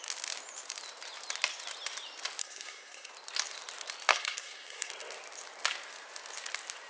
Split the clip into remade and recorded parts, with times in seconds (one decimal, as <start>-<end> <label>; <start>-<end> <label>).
0.0-2.4 recorded; 2.4-3.1 remade; 3.1-4.1 recorded; 4.1-4.9 remade; 4.9-6.9 recorded